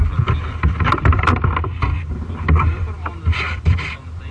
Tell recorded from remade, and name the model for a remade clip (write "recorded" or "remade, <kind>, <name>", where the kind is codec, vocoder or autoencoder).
recorded